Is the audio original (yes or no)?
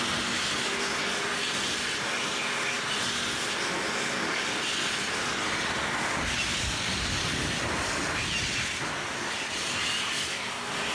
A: yes